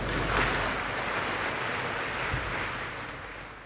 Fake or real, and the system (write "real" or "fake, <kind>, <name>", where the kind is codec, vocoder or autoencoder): real